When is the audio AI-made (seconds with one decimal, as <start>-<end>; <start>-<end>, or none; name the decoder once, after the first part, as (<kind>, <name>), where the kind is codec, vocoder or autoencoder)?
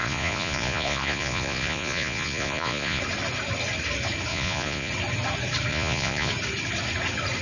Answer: 0.0-3.0 (vocoder, Vocos); 4.3-4.9; 5.7-6.3